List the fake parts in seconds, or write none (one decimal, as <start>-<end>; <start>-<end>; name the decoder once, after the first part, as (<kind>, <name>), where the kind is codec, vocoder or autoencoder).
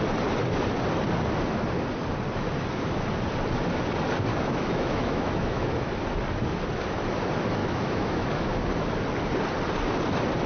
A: 4.3-5.9 (autoencoder, DAC-VAE); 7.6-8.5